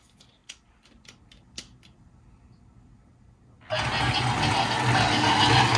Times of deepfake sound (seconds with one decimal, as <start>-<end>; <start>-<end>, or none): none